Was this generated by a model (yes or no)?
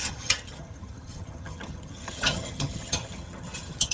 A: yes